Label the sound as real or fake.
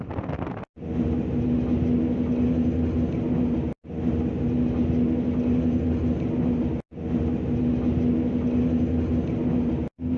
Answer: real